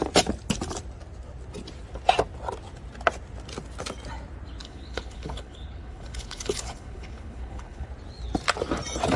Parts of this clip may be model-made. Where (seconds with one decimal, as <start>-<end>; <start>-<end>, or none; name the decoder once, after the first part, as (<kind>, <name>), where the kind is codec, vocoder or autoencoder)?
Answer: 4.6-7.9 (codec, HILCodec)